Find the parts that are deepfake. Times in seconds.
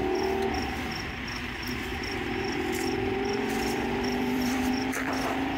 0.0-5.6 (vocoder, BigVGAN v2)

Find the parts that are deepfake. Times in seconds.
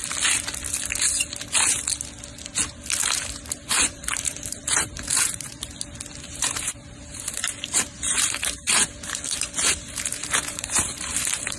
3.0-5.6 (vocoder, BigVGAN v2); 6.4-11.6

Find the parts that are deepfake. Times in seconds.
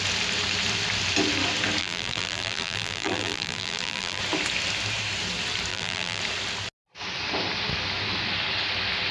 1.8-4.2 (vocoder, BigVGAN v2); 5.7-6.2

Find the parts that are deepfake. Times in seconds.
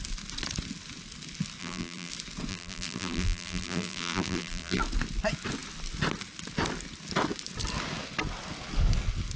1.6-2.1 (vocoder, BigVGAN v2); 2.5-4.8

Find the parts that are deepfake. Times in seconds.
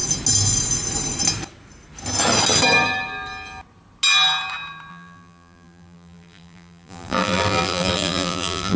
4.9-8.8 (vocoder, BigVGAN v2)